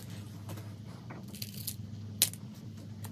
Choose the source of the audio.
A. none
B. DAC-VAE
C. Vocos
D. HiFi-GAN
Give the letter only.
A